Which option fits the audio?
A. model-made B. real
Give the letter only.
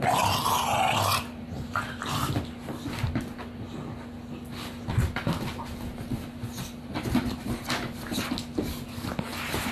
B